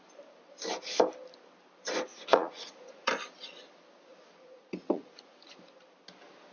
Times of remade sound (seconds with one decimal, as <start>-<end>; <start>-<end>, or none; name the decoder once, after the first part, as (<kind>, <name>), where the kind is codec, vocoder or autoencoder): 2.1-3.1 (vocoder, Vocos); 4.1-5.7